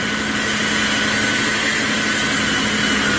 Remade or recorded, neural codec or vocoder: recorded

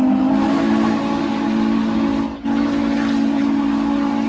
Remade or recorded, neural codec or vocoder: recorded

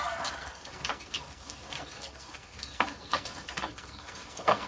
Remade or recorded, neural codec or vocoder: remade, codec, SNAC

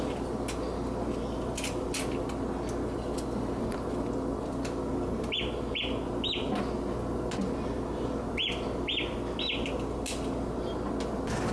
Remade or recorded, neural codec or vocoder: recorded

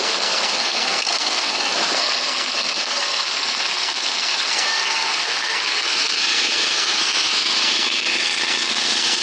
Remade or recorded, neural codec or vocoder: remade, codec, SNAC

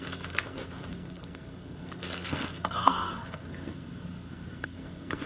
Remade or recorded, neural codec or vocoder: remade, codec, SNAC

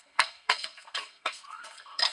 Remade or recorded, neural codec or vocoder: remade, codec, SNAC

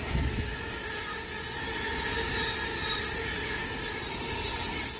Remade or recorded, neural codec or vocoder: recorded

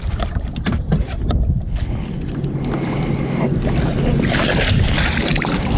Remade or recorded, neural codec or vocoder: recorded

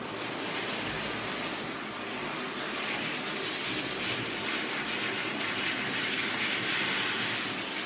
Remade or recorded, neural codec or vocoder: recorded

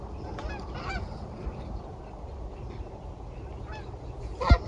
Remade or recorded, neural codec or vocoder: recorded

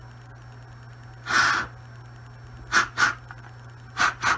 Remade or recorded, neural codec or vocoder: recorded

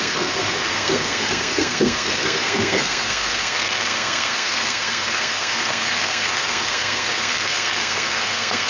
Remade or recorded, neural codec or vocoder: remade, codec, SNAC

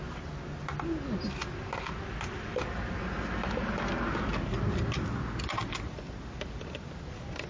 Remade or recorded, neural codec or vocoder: recorded